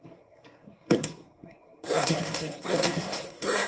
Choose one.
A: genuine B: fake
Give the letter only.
B